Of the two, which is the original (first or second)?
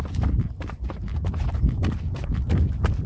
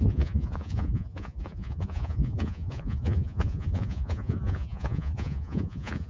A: first